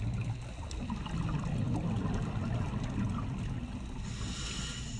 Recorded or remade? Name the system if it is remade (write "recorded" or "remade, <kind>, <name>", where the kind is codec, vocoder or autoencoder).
recorded